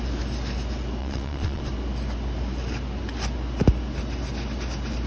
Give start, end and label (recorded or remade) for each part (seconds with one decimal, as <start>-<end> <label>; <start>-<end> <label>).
0.0-1.0 recorded; 1.0-1.6 remade; 1.6-5.1 recorded